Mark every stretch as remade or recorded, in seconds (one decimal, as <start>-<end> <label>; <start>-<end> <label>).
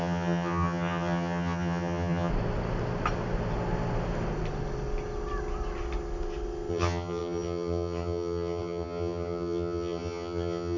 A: 0.0-2.3 remade; 2.3-6.7 recorded; 6.7-10.8 remade